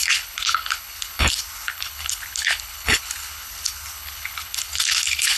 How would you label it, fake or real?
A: fake